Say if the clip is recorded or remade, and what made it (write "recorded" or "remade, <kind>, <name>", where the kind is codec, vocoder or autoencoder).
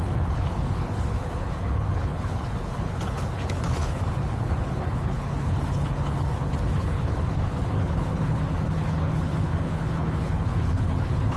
remade, codec, HILCodec